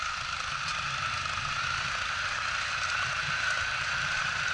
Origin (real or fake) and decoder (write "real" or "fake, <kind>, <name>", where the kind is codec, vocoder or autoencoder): real